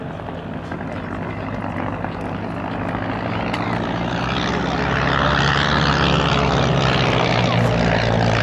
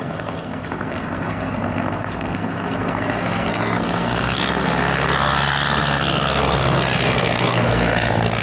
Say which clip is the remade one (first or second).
second